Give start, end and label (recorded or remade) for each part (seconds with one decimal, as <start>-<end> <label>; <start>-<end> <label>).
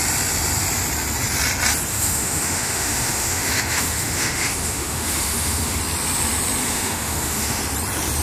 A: 0.0-1.9 recorded; 1.9-5.8 remade; 5.8-6.6 recorded; 6.6-7.6 remade; 7.6-8.2 recorded